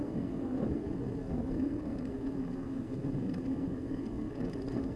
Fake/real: fake